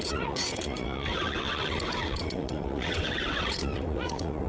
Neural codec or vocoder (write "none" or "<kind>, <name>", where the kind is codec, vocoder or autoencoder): vocoder, WaveNeXt